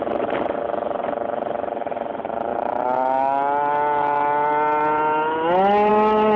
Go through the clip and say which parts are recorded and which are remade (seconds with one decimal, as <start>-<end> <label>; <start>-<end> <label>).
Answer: 0.0-6.4 recorded